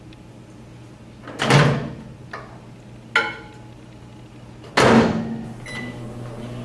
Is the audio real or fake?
real